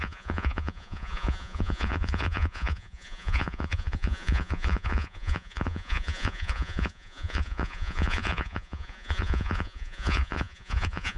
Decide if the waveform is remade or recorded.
remade